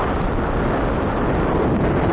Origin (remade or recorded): remade